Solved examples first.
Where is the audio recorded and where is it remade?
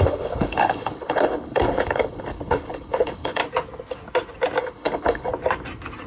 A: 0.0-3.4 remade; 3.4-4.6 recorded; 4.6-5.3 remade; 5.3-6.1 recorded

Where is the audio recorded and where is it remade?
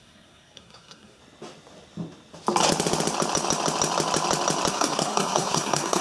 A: 0.0-1.2 remade; 1.2-4.7 recorded; 4.7-6.0 remade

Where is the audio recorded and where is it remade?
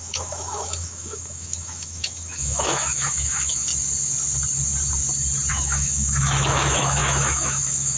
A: 0.0-3.7 remade; 3.7-5.5 recorded; 5.5-8.0 remade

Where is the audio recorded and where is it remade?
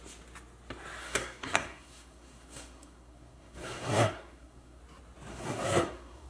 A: 0.0-1.0 recorded; 1.0-4.8 remade; 4.8-5.3 recorded; 5.3-6.3 remade